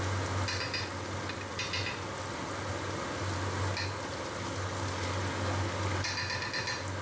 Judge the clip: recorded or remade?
recorded